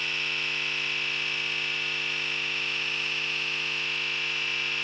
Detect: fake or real fake